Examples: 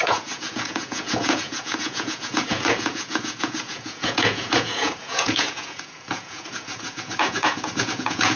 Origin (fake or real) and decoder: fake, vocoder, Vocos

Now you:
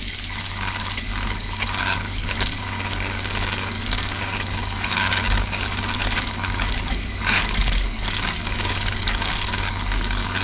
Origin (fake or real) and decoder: fake, codec, DAC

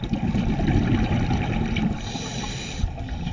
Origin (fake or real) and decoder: real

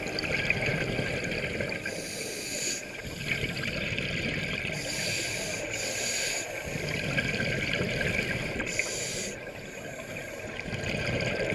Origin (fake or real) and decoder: real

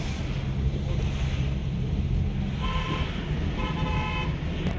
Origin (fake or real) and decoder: real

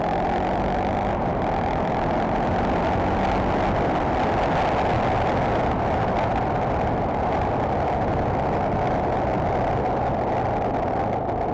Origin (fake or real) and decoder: real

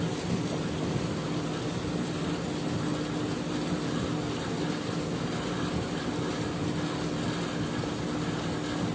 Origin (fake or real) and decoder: real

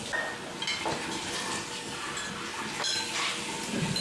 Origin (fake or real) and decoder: real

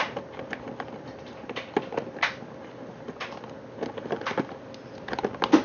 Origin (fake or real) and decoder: real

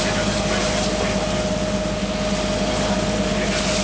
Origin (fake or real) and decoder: real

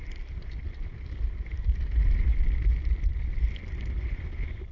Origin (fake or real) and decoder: real